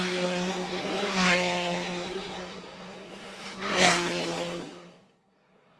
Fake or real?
fake